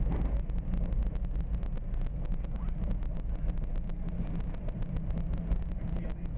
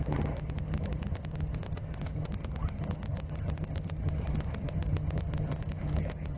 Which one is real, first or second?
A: first